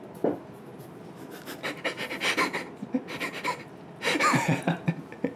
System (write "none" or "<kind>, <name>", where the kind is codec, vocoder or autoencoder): none